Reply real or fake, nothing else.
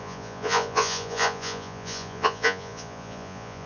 fake